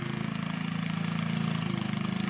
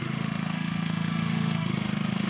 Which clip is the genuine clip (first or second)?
first